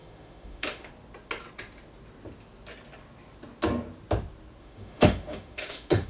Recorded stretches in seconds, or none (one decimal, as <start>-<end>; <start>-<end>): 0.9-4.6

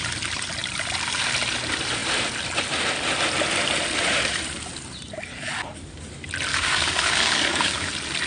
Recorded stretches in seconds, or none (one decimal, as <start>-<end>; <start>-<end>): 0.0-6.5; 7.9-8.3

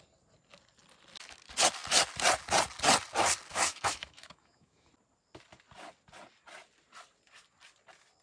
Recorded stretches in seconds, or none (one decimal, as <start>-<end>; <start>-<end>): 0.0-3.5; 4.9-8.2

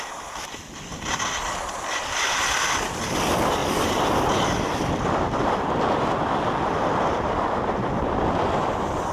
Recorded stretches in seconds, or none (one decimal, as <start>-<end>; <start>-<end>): 0.0-0.9; 3.0-3.6; 8.2-9.1

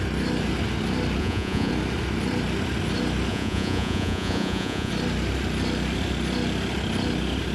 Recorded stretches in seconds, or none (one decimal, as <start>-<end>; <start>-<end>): 0.0-1.2; 1.7-3.3; 4.9-7.5